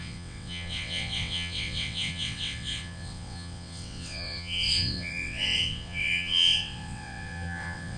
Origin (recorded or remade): remade